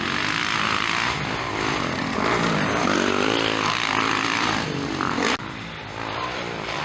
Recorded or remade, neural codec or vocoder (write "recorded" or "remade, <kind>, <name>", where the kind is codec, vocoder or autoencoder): recorded